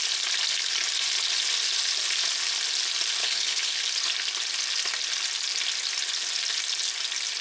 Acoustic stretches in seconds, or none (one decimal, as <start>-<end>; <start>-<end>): 0.0-3.2; 3.8-7.4